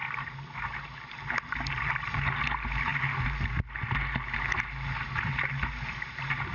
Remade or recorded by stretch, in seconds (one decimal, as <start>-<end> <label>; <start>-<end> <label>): 0.0-6.5 recorded